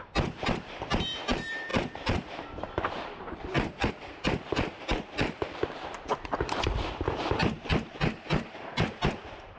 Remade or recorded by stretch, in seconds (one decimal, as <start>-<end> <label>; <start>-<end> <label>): 0.0-9.6 remade